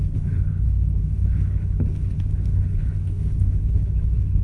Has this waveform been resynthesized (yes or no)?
yes